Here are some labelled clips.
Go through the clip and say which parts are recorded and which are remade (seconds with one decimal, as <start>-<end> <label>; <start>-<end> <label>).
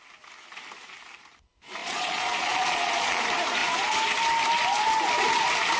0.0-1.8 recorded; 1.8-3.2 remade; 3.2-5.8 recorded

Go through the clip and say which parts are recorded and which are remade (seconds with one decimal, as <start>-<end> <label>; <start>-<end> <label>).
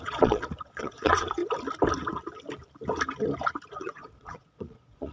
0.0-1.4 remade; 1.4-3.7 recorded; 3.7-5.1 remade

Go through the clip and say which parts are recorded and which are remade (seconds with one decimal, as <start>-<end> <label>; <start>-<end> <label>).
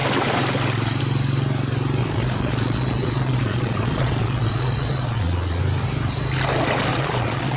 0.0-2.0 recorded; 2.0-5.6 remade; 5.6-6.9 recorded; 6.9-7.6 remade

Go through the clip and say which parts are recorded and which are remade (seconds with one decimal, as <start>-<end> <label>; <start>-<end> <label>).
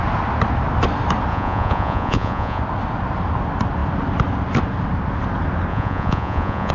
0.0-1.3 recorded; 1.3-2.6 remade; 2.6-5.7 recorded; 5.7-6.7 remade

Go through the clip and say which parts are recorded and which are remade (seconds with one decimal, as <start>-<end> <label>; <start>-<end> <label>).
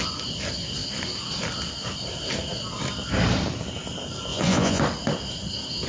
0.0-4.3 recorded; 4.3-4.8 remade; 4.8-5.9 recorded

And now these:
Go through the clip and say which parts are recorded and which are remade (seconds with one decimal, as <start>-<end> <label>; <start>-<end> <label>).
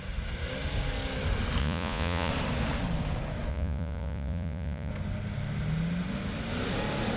0.0-1.6 recorded; 1.6-2.3 remade; 2.3-3.5 recorded; 3.5-4.9 remade; 4.9-7.2 recorded